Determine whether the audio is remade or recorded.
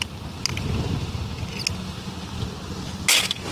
recorded